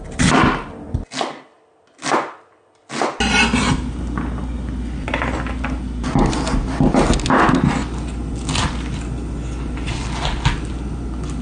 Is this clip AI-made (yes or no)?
no